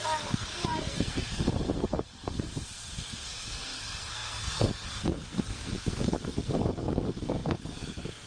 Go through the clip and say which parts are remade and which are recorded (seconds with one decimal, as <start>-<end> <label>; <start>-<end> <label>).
0.0-8.3 remade